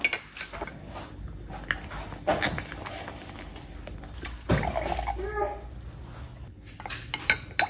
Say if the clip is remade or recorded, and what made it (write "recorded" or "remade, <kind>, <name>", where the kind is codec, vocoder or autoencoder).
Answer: recorded